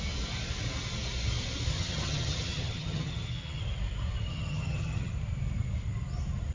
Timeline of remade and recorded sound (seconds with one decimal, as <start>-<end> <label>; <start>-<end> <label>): 0.0-1.7 recorded; 1.7-3.6 remade; 3.6-4.3 recorded; 4.3-5.1 remade; 5.1-6.5 recorded